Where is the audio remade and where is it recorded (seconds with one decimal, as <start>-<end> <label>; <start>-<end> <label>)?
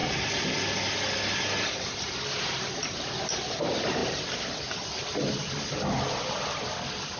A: 0.0-7.2 recorded